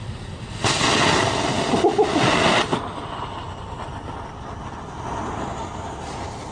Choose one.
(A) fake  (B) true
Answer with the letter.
B